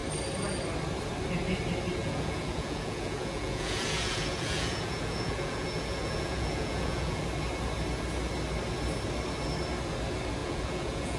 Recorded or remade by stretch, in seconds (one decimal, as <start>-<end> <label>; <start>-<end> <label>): 0.0-2.0 recorded; 2.0-7.2 remade; 7.2-10.4 recorded; 10.4-11.2 remade